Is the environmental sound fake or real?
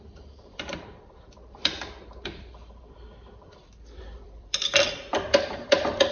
fake